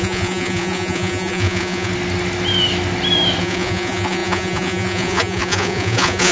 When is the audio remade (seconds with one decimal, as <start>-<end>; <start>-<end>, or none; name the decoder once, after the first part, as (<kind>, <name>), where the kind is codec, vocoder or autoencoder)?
0.0-1.9 (vocoder, Vocos); 3.4-6.3